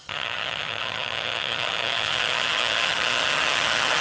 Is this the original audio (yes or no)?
no